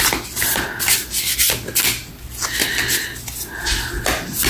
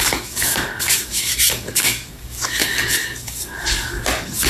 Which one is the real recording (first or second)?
first